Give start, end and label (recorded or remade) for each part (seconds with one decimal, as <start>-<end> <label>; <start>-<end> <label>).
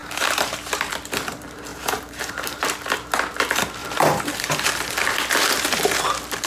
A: 0.0-0.9 remade; 0.9-1.7 recorded; 1.7-2.6 remade; 2.6-3.8 recorded; 3.8-4.9 remade; 4.9-5.4 recorded; 5.4-6.0 remade; 6.0-6.5 recorded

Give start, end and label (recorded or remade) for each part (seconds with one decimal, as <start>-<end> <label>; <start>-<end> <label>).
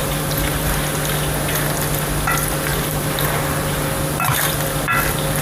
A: 0.0-0.7 remade; 0.7-2.7 recorded; 2.7-3.9 remade; 3.9-5.4 recorded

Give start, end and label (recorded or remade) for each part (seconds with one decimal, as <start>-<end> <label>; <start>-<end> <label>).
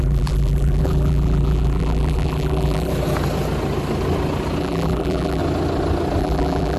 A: 0.0-2.9 remade; 2.9-4.6 recorded; 4.6-5.4 remade; 5.4-6.2 recorded; 6.2-6.8 remade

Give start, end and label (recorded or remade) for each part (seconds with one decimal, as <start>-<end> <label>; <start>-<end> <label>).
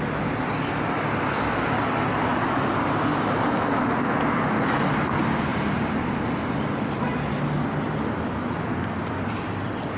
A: 0.0-2.3 recorded; 2.3-3.6 remade; 3.6-5.5 recorded; 5.5-6.1 remade; 6.1-10.0 recorded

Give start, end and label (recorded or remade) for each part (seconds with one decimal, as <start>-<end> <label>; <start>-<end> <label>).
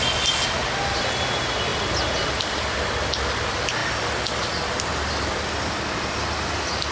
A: 0.0-1.7 recorded; 1.7-2.6 remade; 2.6-6.9 recorded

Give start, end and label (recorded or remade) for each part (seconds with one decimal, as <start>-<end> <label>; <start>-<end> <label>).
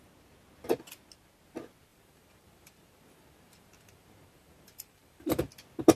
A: 0.0-1.9 recorded; 1.9-5.5 remade; 5.5-6.0 recorded